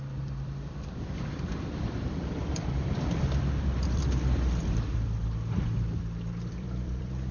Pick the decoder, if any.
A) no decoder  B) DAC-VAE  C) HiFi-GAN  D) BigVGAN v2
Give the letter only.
D